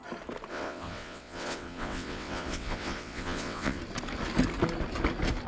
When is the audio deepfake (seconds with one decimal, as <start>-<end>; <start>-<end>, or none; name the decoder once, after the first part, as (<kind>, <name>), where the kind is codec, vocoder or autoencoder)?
0.5-3.8 (vocoder, WaveNeXt)